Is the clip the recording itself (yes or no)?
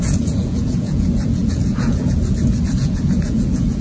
no